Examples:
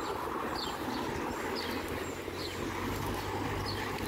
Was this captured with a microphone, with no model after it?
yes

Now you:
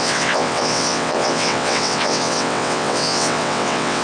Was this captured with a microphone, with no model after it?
no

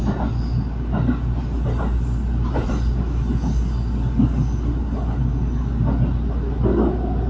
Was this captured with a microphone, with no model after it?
yes